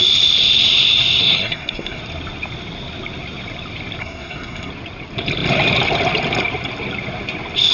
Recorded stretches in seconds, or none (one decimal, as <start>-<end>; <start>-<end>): 0.0-1.2; 2.0-4.0; 4.7-7.7